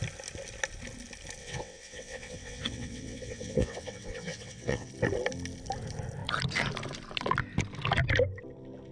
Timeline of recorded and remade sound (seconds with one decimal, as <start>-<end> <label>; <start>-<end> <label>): 0.0-1.4 recorded; 1.4-4.9 remade; 4.9-8.9 recorded